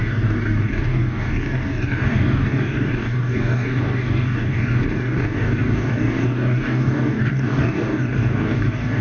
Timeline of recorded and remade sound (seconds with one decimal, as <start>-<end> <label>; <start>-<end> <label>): 0.0-9.0 remade

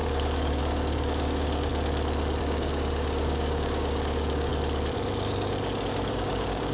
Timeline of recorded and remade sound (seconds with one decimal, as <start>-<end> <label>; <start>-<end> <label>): 0.0-1.7 remade; 1.7-2.4 recorded; 2.4-4.5 remade; 4.5-5.9 recorded; 5.9-6.7 remade

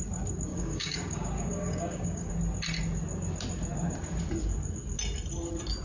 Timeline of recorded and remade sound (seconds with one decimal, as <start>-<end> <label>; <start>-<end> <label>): 0.0-0.5 recorded; 0.5-2.3 remade; 2.3-5.8 recorded